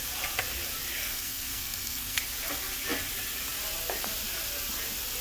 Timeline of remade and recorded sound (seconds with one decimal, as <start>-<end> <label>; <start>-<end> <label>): 0.0-1.0 recorded; 1.0-2.2 remade; 2.2-5.2 recorded